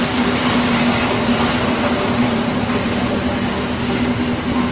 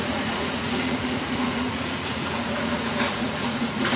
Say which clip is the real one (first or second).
first